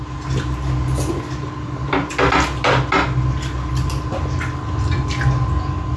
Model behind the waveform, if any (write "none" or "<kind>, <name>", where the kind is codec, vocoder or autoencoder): none